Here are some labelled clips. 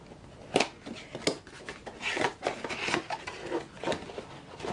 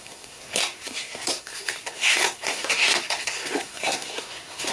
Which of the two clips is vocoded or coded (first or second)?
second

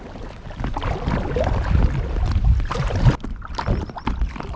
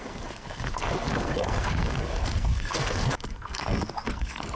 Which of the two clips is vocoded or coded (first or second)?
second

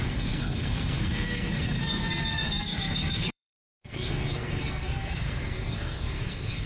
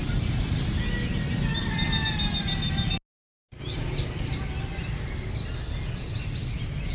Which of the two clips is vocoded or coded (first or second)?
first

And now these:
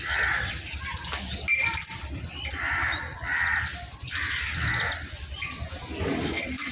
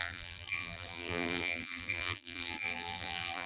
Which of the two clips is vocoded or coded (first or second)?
second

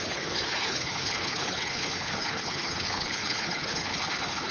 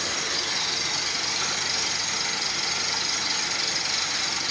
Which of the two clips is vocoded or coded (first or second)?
first